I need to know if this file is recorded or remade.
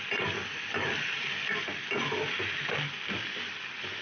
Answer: recorded